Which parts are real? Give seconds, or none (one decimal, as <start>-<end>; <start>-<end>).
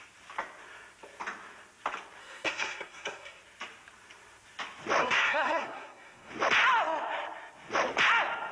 0.0-2.2; 3.4-5.0; 6.3-8.5